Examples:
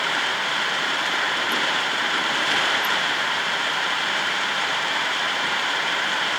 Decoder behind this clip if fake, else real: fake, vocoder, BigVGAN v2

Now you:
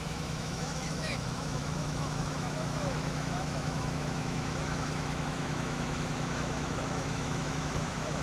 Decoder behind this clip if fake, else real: fake, autoencoder, DAC-VAE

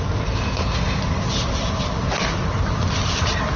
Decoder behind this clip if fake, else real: fake, vocoder, BigVGAN v2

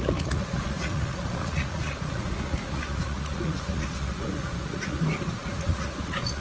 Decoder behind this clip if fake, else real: fake, vocoder, Vocos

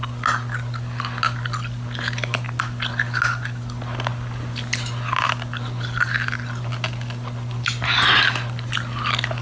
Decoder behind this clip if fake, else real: real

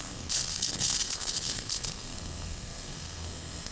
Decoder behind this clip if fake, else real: fake, codec, SNAC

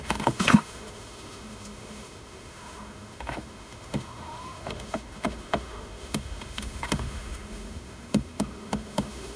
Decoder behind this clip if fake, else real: fake, autoencoder, DAC-VAE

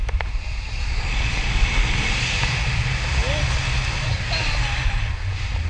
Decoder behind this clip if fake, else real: real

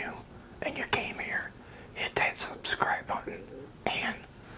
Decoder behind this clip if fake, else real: real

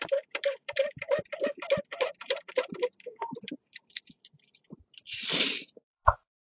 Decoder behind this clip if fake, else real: fake, vocoder, BigVGAN v2